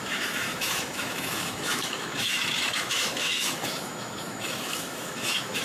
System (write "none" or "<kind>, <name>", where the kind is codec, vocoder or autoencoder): autoencoder, DAC-VAE